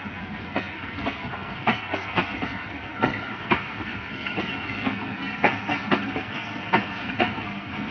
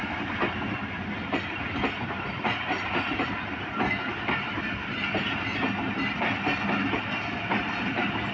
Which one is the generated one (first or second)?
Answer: first